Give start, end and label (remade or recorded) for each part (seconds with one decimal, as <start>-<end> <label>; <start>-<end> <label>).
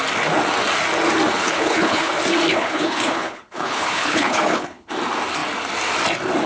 0.0-1.4 recorded; 1.4-2.1 remade; 2.1-2.5 recorded; 2.5-4.9 remade; 4.9-6.5 recorded